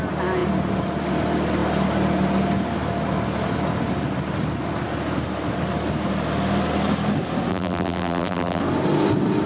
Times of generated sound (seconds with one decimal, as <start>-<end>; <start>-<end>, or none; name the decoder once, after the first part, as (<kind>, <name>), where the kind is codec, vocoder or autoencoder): 7.5-8.6 (vocoder, BigVGAN v2)